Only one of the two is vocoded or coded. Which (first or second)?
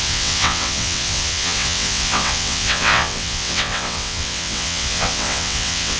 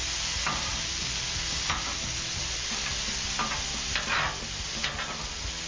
first